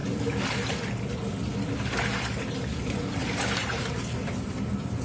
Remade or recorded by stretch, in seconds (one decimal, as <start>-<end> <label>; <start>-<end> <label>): 0.0-2.4 recorded; 2.4-5.0 remade